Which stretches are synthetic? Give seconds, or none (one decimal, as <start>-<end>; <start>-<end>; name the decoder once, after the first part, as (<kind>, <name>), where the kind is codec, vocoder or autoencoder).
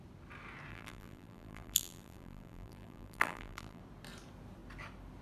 0.7-3.8 (vocoder, BigVGAN v2)